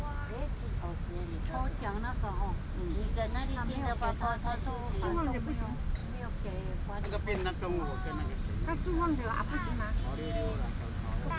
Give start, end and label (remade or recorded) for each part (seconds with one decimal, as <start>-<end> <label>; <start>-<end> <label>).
0.0-11.4 recorded